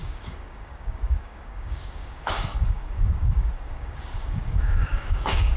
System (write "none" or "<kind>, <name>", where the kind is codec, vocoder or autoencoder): codec, DAC